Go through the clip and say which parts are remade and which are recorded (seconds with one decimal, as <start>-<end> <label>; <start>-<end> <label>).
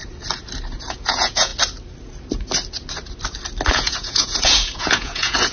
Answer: 0.0-0.9 recorded; 0.9-1.5 remade; 1.5-3.7 recorded; 3.7-5.5 remade